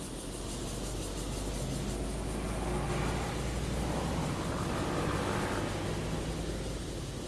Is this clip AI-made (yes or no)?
no